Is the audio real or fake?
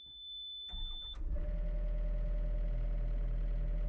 real